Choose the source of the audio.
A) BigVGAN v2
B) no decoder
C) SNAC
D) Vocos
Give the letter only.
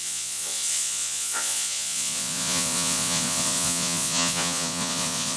D